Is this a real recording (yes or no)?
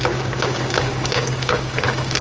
no